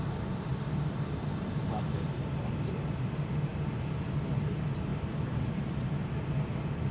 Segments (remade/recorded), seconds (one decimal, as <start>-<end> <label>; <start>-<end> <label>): 0.0-0.5 recorded; 0.5-2.2 remade; 2.2-4.9 recorded; 4.9-5.6 remade; 5.6-6.9 recorded